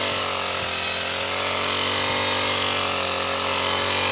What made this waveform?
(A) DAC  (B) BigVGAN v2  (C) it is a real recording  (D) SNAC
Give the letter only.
C